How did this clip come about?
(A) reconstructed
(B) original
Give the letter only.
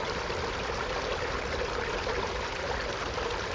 B